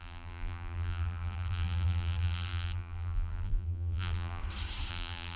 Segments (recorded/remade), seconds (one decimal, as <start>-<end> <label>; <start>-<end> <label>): 0.0-4.4 remade; 4.4-4.9 recorded; 4.9-5.4 remade